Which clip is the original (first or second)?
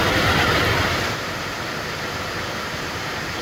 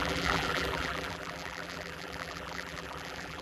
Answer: first